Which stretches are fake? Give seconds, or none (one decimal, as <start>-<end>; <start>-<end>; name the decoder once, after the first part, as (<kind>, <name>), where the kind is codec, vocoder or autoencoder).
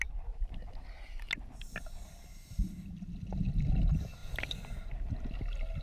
none